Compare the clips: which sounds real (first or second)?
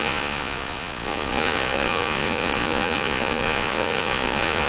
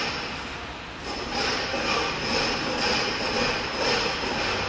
second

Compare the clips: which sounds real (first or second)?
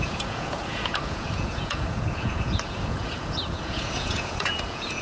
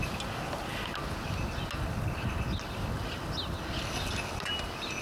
second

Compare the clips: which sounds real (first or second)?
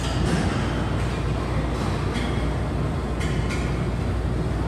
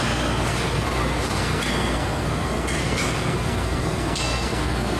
first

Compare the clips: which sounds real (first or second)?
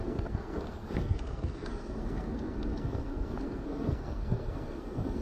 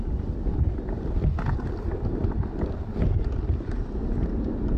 second